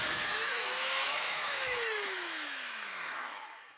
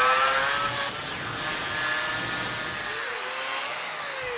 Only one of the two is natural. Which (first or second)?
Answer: second